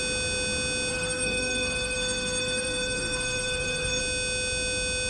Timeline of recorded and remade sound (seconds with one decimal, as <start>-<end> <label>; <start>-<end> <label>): 0.0-0.9 recorded; 0.9-4.0 remade; 4.0-5.1 recorded

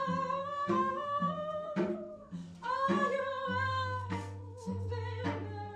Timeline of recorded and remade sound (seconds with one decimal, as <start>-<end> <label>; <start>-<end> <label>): 0.0-0.4 recorded; 0.4-2.7 remade; 2.7-3.7 recorded; 3.7-4.9 remade; 4.9-5.8 recorded